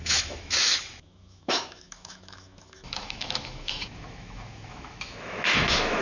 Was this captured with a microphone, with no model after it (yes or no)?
no